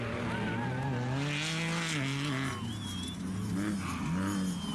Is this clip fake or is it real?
real